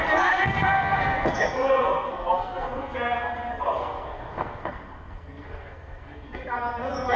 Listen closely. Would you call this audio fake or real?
fake